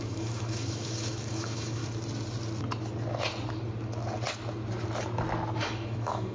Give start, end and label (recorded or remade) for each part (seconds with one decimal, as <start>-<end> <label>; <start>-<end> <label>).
0.0-1.8 remade; 1.8-5.6 recorded; 5.6-6.3 remade